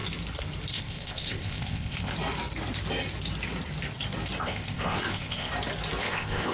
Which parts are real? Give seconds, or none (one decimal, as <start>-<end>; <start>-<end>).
0.0-0.7; 2.1-4.4; 5.5-6.0